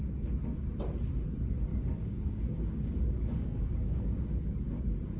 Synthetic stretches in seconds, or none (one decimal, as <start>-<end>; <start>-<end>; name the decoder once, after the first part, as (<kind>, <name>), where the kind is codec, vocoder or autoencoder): 1.7-4.8 (codec, DAC)